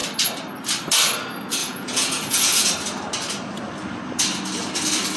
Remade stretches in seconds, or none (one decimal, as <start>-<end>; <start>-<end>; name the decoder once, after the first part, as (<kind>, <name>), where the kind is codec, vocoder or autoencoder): 1.6-2.7 (vocoder, Vocos)